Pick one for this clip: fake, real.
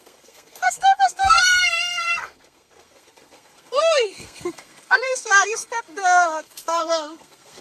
fake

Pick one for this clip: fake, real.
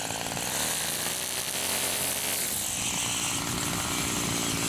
real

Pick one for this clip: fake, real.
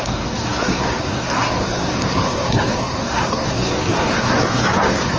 fake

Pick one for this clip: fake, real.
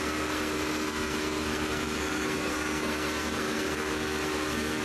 fake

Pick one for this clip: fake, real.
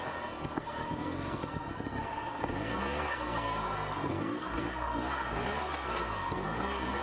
fake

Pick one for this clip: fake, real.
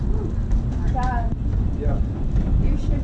real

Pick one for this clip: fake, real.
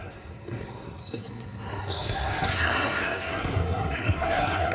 fake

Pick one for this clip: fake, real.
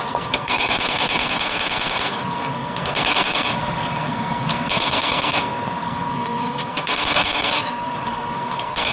fake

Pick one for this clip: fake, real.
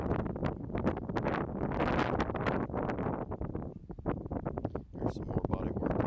real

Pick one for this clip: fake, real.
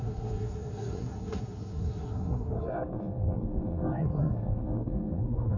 fake